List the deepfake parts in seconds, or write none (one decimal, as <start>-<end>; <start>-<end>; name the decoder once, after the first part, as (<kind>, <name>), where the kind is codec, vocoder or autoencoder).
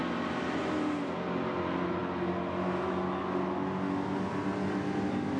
none